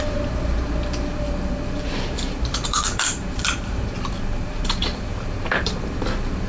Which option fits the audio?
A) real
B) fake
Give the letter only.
B